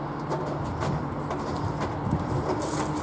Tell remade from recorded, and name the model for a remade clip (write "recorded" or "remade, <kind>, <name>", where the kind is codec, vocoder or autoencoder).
recorded